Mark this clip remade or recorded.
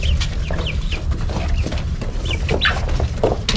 recorded